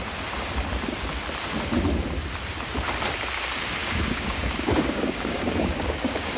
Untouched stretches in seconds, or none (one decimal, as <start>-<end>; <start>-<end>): 0.0-3.8